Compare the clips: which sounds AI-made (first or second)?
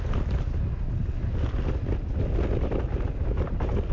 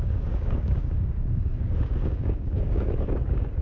second